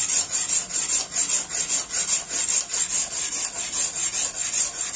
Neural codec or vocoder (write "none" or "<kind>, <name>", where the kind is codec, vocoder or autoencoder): none